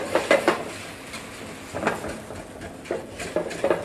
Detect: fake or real real